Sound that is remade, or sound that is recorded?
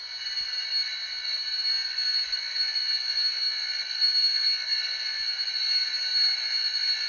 recorded